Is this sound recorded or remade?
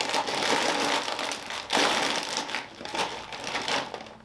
recorded